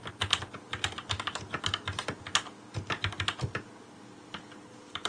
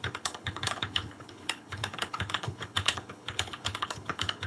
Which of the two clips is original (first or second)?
first